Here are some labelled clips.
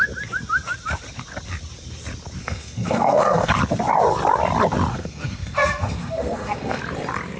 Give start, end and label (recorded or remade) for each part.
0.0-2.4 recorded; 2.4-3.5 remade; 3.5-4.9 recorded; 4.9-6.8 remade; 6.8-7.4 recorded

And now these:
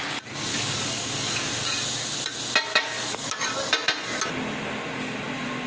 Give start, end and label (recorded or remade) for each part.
0.0-0.5 recorded; 0.5-1.5 remade; 1.5-2.7 recorded; 2.7-3.4 remade; 3.4-5.7 recorded

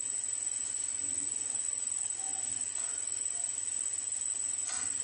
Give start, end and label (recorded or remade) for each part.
0.0-5.0 recorded

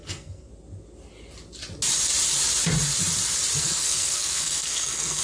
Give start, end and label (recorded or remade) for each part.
0.0-0.5 remade; 0.5-3.6 recorded; 3.6-5.2 remade

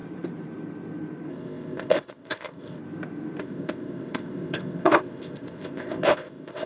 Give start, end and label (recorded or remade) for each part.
0.0-1.3 recorded; 1.3-2.8 remade; 2.8-3.4 recorded; 3.4-6.7 remade